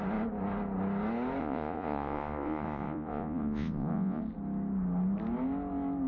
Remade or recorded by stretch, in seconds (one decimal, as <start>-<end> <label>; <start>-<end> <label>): 0.0-1.4 recorded; 1.4-4.2 remade; 4.2-6.1 recorded